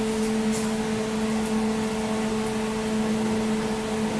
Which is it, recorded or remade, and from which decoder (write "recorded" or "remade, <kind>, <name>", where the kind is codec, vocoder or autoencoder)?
recorded